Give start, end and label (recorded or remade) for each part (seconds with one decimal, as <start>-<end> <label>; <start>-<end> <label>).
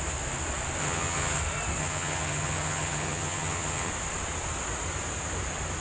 0.0-0.8 recorded; 0.8-1.4 remade; 1.4-1.8 recorded; 1.8-3.9 remade; 3.9-5.8 recorded